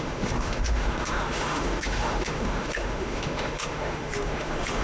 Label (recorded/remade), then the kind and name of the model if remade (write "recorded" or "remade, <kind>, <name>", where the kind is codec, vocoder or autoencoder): remade, autoencoder, DAC-VAE